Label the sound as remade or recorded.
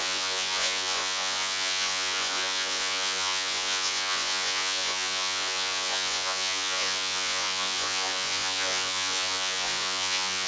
remade